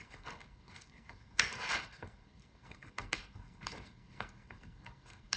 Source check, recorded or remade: remade